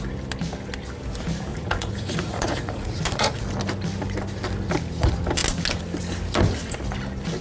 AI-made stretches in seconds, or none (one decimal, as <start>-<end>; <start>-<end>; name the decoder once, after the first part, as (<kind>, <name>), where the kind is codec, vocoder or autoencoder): 1.5-3.4 (vocoder, Vocos)